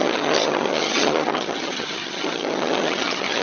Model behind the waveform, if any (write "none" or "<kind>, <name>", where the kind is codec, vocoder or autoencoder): vocoder, HiFi-GAN